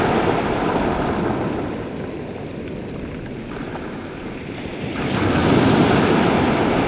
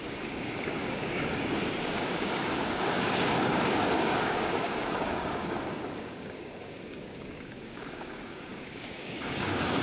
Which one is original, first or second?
first